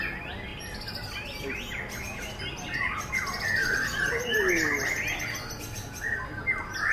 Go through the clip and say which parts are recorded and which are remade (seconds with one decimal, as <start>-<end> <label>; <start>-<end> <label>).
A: 0.0-3.6 recorded; 3.6-4.5 remade; 4.5-6.9 recorded